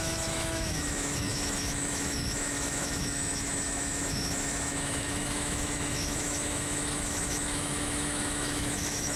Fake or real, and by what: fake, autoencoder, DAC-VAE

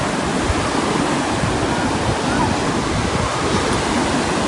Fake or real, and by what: real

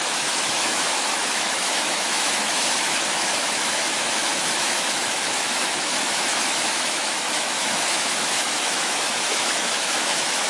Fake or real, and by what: fake, autoencoder, DAC-VAE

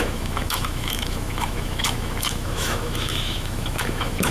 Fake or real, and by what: fake, autoencoder, DAC-VAE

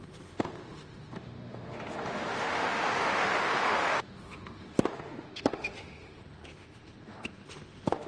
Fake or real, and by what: fake, autoencoder, DAC-VAE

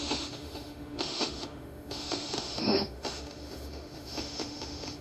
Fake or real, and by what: fake, autoencoder, DAC-VAE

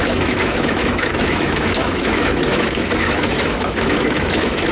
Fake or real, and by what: fake, autoencoder, DAC-VAE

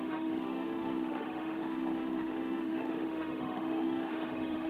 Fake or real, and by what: fake, autoencoder, DAC-VAE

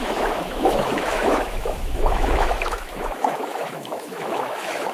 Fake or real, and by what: fake, autoencoder, DAC-VAE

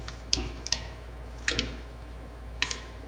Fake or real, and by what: fake, autoencoder, DAC-VAE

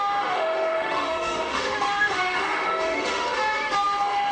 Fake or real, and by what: fake, autoencoder, DAC-VAE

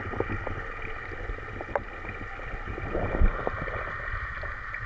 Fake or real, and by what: real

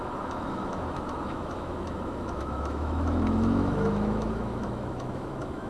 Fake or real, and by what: fake, autoencoder, DAC-VAE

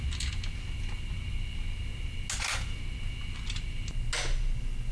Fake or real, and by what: real